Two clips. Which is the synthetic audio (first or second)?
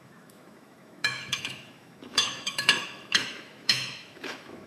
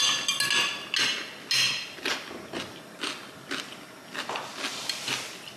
first